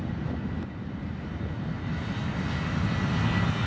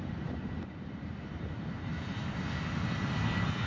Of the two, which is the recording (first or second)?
first